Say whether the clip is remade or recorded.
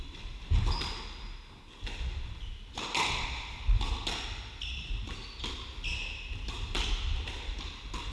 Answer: recorded